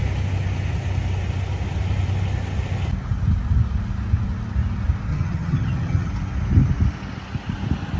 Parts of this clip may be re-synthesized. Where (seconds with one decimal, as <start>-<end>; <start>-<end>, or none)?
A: 5.1-6.1